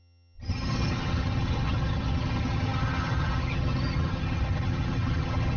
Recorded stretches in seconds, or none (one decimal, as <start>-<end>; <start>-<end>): none